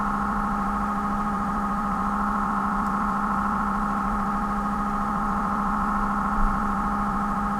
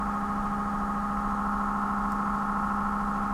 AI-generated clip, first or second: first